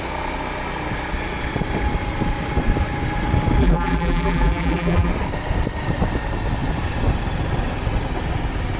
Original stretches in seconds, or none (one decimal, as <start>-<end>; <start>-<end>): 0.0-3.6; 5.1-8.8